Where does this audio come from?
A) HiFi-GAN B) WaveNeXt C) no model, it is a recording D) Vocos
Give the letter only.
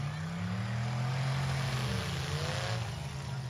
C